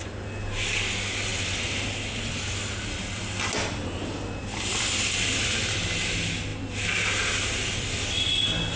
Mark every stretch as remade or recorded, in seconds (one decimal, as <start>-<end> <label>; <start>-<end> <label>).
0.0-1.3 recorded; 1.3-2.7 remade; 2.7-4.4 recorded; 4.4-5.4 remade; 5.4-8.8 recorded